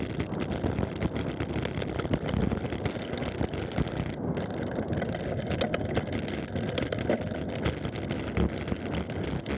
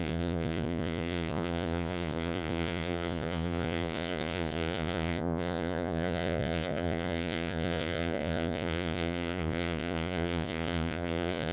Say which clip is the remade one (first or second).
second